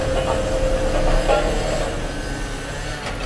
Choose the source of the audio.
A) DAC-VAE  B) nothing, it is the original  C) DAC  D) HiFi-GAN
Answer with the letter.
B